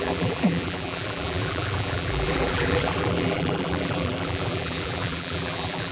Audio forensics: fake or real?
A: fake